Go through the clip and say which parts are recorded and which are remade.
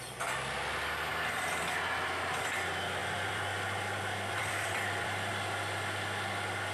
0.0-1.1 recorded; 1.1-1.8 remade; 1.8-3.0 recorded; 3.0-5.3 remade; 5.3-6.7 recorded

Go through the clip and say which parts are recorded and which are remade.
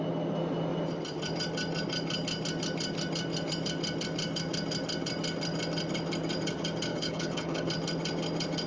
0.0-6.9 recorded; 6.9-7.7 remade; 7.7-8.7 recorded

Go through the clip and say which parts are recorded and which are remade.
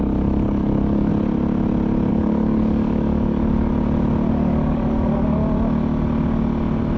0.0-1.1 remade; 1.1-2.1 recorded; 2.1-3.7 remade; 3.7-4.3 recorded; 4.3-5.4 remade; 5.4-7.0 recorded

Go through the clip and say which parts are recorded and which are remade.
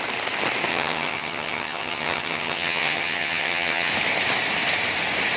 0.0-0.7 recorded; 0.7-3.9 remade; 3.9-5.4 recorded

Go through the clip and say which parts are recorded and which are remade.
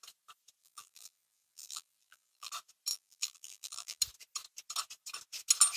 0.0-0.6 recorded; 0.6-2.5 remade; 2.5-2.9 recorded; 2.9-4.0 remade; 4.0-5.8 recorded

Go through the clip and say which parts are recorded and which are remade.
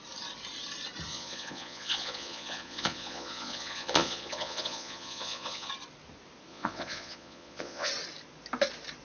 0.0-1.1 recorded; 1.1-5.7 remade; 5.7-6.5 recorded; 6.5-7.9 remade; 7.9-9.0 recorded